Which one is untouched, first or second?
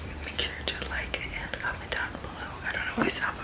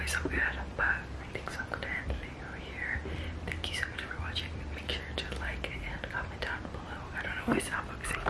second